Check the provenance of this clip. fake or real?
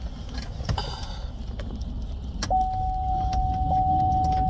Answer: real